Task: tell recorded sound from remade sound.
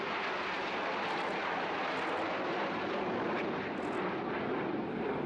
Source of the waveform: recorded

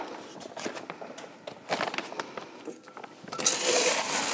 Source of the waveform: recorded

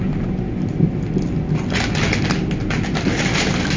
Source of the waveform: recorded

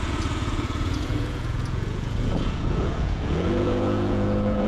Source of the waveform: remade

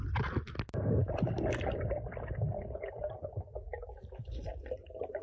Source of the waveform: recorded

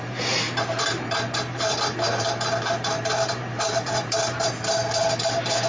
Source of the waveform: remade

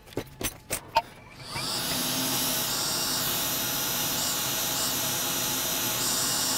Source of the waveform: recorded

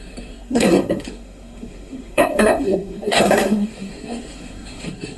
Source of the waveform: remade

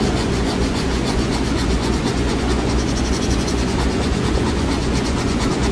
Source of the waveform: remade